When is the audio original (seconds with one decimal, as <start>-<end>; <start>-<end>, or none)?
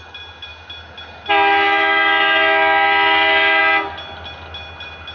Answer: 0.0-5.1